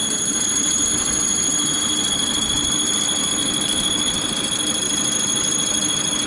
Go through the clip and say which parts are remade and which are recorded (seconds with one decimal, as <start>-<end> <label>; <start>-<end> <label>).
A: 0.0-0.9 remade; 0.9-6.3 recorded